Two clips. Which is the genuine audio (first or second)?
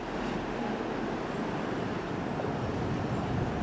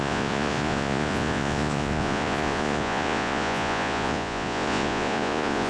first